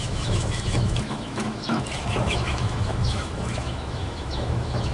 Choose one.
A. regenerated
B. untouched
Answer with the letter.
A